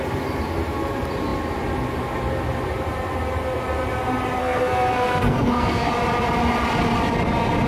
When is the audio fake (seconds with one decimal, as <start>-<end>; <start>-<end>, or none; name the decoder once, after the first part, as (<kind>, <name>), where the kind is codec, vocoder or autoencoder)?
4.4-5.9 (codec, SNAC)